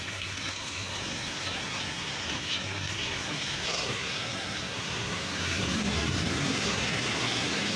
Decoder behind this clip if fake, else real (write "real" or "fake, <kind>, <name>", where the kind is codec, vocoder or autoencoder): fake, codec, SNAC